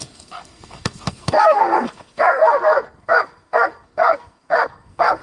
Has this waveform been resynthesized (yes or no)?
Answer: yes